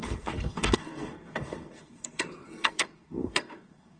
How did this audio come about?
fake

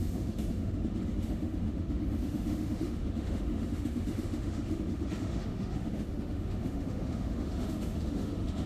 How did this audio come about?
fake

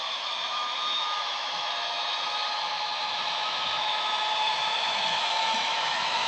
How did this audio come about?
fake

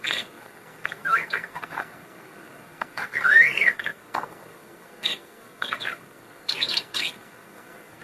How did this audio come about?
fake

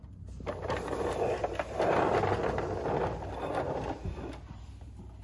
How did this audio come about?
real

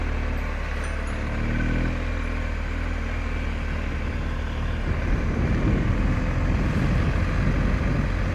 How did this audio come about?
real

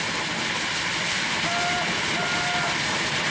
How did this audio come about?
real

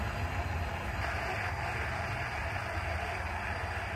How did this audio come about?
real